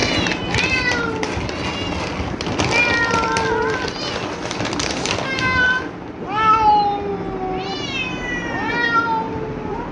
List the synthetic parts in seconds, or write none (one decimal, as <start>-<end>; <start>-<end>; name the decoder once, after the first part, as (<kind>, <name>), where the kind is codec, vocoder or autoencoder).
none